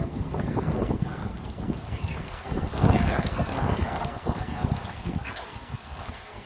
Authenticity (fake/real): fake